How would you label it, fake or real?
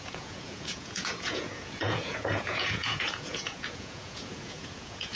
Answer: fake